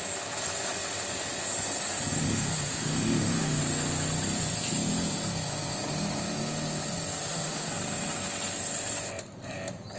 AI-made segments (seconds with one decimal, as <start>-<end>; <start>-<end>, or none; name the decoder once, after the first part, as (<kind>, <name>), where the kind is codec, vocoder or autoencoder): 2.2-3.6 (autoencoder, DAC-VAE); 7.2-7.7